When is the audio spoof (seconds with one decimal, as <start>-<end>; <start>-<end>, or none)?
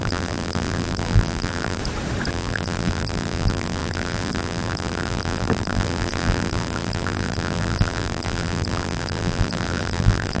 0.0-1.8; 2.3-10.4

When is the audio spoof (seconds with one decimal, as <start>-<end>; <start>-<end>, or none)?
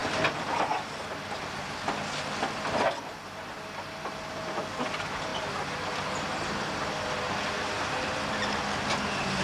none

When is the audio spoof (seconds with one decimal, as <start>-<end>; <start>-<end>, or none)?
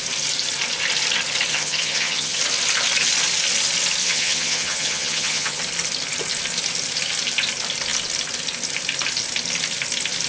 1.5-2.4; 4.0-5.6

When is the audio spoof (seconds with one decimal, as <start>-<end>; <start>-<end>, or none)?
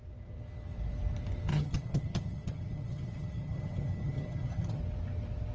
1.5-4.8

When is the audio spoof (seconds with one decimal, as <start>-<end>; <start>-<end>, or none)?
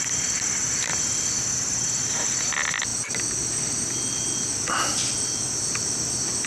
none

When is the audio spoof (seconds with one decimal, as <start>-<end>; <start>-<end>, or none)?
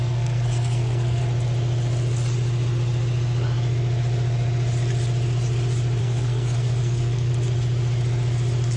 0.0-1.2; 6.0-7.3